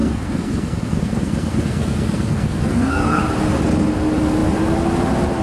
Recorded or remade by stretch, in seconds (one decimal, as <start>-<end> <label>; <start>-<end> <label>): 0.0-3.2 remade; 3.2-5.4 recorded